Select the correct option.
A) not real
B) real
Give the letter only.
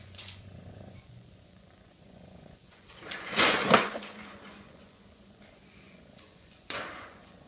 A